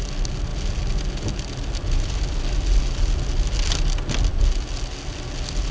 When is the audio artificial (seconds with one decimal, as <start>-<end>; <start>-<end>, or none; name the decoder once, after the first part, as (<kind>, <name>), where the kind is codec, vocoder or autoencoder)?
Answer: none